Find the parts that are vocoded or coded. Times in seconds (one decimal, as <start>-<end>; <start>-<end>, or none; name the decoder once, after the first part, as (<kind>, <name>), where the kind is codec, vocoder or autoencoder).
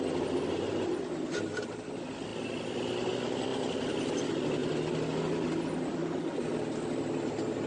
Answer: none